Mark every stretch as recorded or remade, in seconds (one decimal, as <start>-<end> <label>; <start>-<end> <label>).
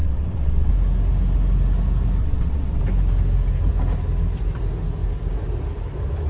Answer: 0.0-0.7 remade; 0.7-2.2 recorded; 2.2-2.8 remade; 2.8-6.3 recorded